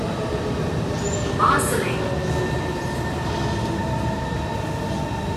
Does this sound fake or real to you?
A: real